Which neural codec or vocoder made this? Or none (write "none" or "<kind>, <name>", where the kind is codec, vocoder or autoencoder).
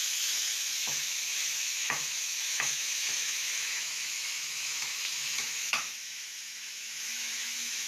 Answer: autoencoder, DAC-VAE